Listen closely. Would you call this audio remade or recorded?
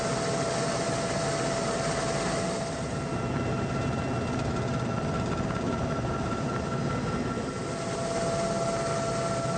recorded